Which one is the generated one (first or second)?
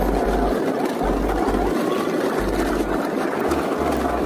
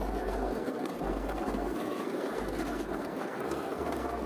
second